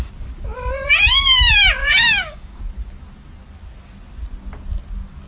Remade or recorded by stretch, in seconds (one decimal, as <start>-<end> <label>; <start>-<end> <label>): 0.0-1.8 recorded; 1.8-2.6 remade; 2.6-5.3 recorded